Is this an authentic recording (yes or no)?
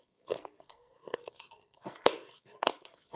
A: no